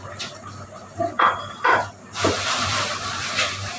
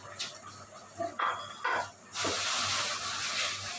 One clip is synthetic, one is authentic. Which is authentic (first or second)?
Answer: second